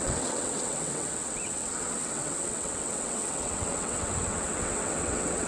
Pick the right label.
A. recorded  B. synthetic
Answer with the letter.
B